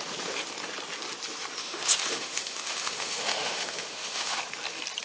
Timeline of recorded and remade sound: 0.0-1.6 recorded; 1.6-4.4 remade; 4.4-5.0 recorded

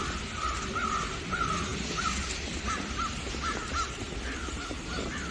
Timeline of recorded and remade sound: 0.0-5.3 recorded

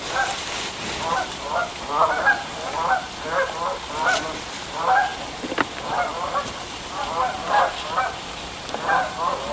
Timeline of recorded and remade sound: 0.0-9.5 recorded

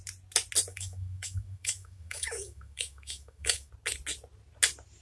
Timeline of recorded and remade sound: 0.0-0.7 recorded; 0.7-3.7 remade; 3.7-5.0 recorded

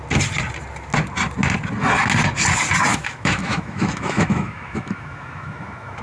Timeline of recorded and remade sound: 0.0-2.9 recorded; 2.9-6.0 remade

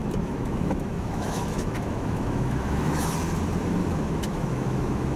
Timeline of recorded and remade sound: 0.0-3.1 remade; 3.1-3.8 recorded; 3.8-5.2 remade